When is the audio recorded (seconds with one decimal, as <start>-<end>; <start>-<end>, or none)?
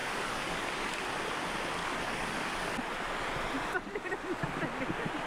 1.0-1.8; 2.8-5.3